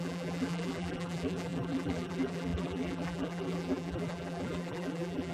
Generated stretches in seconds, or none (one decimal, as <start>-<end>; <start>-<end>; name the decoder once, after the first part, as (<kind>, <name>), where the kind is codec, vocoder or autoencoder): 0.0-5.3 (vocoder, BigVGAN v2)